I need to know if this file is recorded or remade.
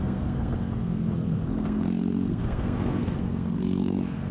remade